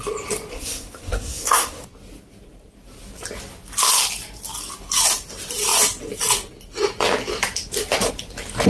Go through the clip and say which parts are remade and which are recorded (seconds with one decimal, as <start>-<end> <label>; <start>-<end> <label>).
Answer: 0.0-0.5 recorded; 0.5-1.8 remade; 1.8-8.7 recorded